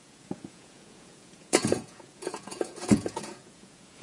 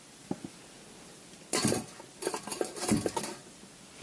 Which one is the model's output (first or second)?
first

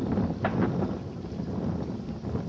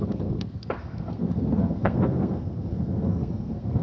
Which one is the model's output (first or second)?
second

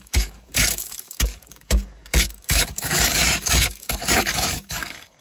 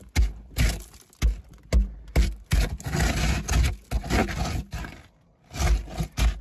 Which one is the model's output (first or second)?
first